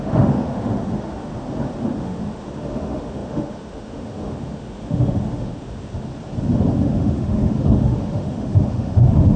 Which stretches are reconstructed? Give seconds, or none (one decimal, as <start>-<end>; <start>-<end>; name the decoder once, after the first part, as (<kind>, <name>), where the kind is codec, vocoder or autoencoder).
0.0-1.3 (autoencoder, DAC-VAE); 2.0-6.1; 6.8-9.4